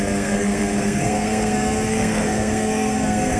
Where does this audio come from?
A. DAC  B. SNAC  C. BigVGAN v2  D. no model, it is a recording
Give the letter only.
B